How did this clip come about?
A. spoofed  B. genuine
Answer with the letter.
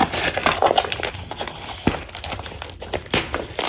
B